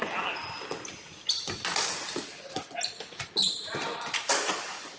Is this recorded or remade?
recorded